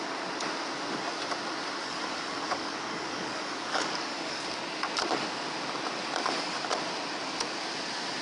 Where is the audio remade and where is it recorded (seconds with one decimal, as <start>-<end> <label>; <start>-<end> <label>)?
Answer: 0.0-1.8 recorded; 1.8-4.6 remade; 4.6-8.2 recorded